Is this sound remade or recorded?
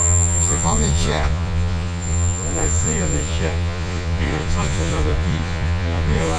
remade